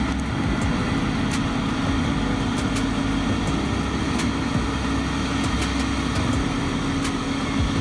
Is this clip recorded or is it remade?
recorded